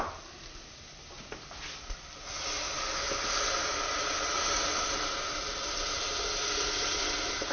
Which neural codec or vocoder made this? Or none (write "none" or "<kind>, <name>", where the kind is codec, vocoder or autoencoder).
none